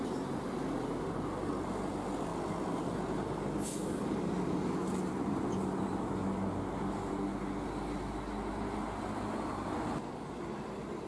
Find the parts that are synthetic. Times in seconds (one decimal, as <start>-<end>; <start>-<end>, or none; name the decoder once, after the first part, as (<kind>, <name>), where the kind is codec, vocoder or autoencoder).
none